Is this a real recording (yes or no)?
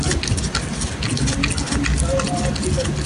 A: yes